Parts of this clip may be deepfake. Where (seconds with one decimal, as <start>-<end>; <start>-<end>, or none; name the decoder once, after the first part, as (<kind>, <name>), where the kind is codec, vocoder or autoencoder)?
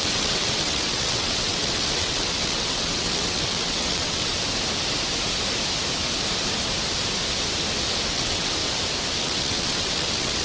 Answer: 0.0-4.3 (vocoder, WaveNeXt); 8.1-8.6; 9.2-10.4